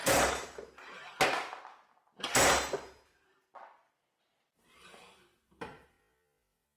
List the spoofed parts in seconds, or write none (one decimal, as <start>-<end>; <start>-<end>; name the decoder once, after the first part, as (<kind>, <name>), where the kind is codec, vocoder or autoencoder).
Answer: none